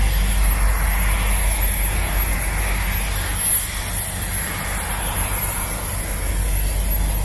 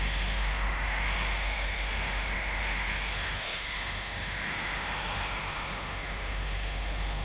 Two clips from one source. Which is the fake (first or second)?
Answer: second